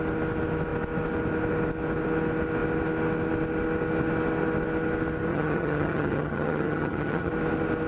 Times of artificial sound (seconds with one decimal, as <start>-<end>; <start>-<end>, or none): 5.3-7.3

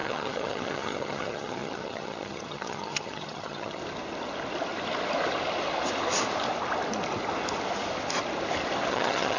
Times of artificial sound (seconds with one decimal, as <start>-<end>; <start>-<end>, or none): 0.0-3.8; 8.9-9.4

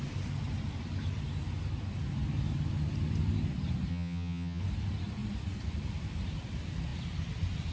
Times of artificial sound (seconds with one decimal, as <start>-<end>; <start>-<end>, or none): 3.9-4.6

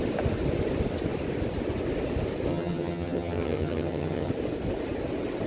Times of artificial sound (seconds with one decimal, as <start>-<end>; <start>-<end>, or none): 2.5-4.3

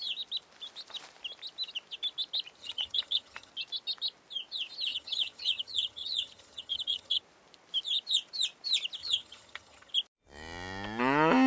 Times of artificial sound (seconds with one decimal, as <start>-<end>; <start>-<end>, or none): 2.6-3.5; 4.9-7.2; 9.0-9.9

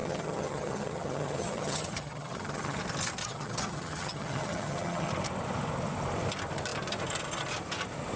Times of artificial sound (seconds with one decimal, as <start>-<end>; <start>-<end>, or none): 0.0-2.8; 3.2-5.1

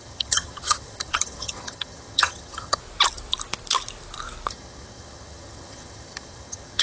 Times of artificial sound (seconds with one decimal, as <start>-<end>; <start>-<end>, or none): 0.0-2.8; 4.5-6.8